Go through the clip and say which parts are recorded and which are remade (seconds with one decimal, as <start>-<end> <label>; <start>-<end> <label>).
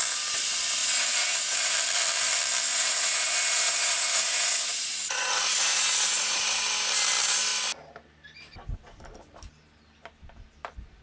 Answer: 0.0-0.8 recorded; 0.8-1.7 remade; 1.7-2.7 recorded; 2.7-6.6 remade; 6.6-11.0 recorded